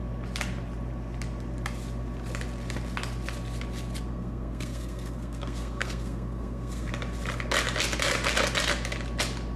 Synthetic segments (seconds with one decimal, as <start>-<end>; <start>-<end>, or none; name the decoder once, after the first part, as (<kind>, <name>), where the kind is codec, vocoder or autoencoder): 4.1-6.9 (codec, SNAC)